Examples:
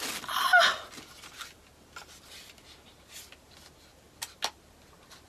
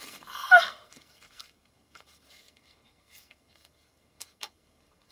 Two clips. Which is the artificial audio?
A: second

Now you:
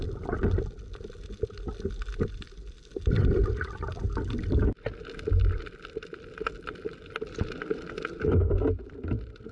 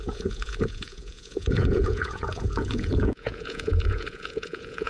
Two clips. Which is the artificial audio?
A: second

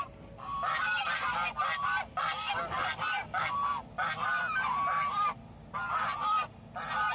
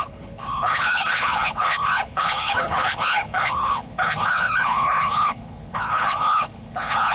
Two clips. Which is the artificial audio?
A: second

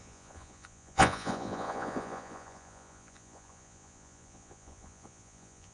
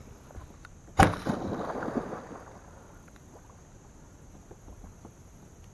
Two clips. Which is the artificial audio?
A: first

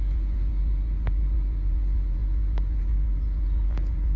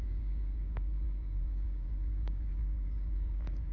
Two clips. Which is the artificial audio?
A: second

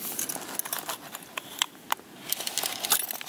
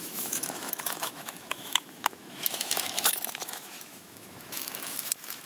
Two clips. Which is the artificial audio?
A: second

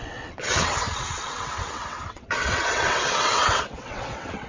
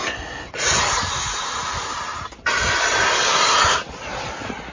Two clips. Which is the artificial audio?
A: first